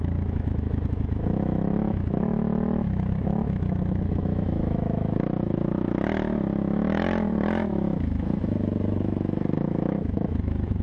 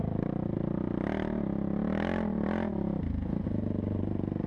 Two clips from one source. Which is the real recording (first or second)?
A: second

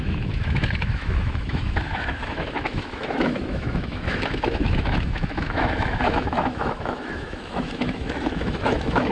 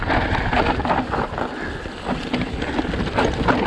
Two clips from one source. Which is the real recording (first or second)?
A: second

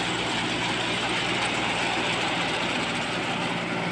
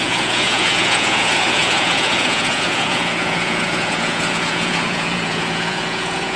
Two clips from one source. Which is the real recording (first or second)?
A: first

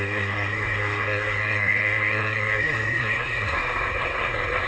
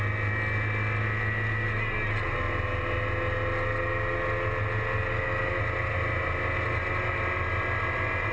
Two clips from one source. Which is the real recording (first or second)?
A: second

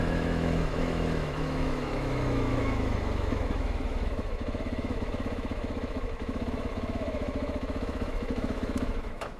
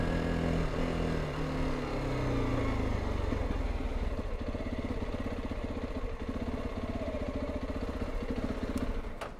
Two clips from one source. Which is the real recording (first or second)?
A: second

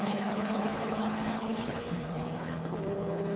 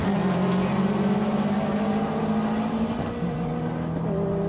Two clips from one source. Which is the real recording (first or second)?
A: second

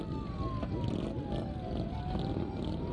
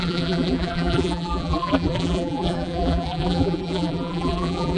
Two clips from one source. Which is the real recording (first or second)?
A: first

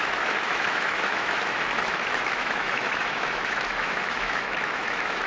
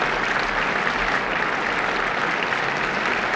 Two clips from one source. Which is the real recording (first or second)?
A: second